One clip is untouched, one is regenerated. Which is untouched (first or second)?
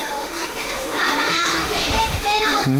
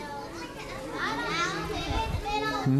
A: second